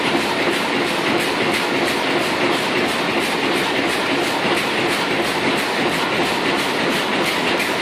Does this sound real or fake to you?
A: real